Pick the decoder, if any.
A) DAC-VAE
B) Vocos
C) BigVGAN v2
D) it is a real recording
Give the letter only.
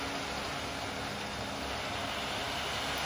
D